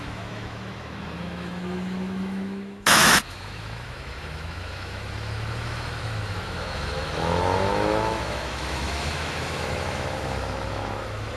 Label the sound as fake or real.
fake